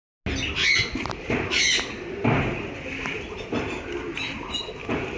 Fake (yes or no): no